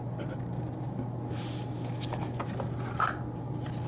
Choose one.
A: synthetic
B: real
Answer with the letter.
B